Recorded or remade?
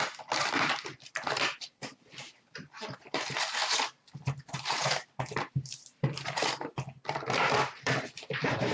remade